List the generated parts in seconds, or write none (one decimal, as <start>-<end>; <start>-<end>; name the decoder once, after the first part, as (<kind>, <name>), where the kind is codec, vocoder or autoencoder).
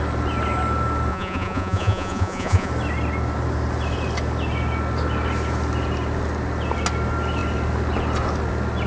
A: 1.1-2.7 (vocoder, Vocos)